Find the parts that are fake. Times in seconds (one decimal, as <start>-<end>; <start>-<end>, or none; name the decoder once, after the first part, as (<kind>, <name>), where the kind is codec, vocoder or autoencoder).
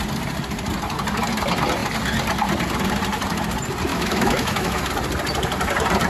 3.9-4.9 (autoencoder, DAC-VAE)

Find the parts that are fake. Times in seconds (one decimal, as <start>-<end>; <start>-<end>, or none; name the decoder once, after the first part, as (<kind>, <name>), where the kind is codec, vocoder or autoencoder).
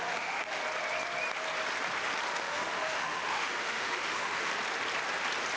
0.0-0.6 (autoencoder, DAC-VAE); 2.4-4.5